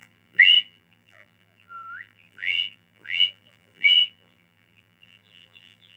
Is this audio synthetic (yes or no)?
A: yes